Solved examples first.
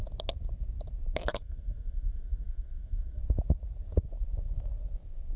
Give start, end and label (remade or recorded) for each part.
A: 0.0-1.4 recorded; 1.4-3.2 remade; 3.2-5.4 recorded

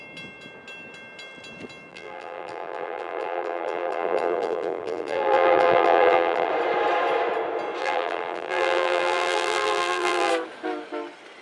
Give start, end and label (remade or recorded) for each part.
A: 0.0-1.9 recorded; 1.9-6.5 remade; 6.5-7.8 recorded; 7.8-10.3 remade; 10.3-11.4 recorded

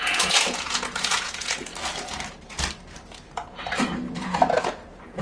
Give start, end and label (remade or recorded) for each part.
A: 0.0-1.7 remade; 1.7-4.2 recorded; 4.2-5.2 remade

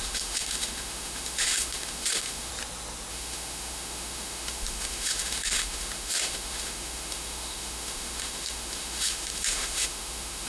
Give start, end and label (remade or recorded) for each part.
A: 0.0-2.5 remade; 2.5-3.1 recorded; 3.1-10.5 remade

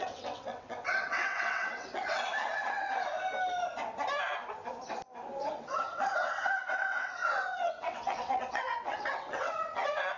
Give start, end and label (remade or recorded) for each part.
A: 0.0-3.1 remade; 3.1-5.4 recorded; 5.4-10.2 remade